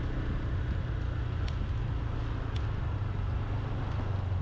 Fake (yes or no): no